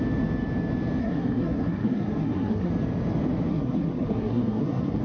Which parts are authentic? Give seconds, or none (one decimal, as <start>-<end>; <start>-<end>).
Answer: 0.0-1.0; 2.7-3.5